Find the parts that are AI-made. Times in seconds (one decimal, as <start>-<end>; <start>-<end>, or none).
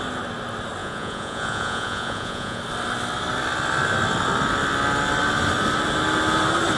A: 0.8-2.6